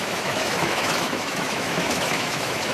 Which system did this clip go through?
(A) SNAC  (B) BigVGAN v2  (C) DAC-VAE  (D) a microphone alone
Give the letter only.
C